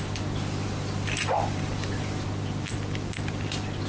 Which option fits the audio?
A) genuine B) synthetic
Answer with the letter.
A